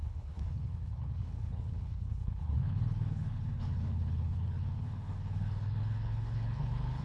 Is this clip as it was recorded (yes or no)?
no